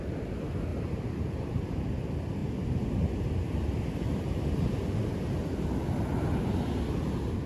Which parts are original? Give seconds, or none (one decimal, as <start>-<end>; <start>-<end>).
0.0-0.7; 1.8-7.5